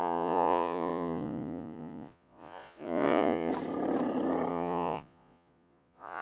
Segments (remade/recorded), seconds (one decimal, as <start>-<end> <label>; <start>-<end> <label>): 0.0-3.5 remade; 3.5-4.5 recorded; 4.5-6.2 remade